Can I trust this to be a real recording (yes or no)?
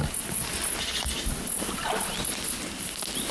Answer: yes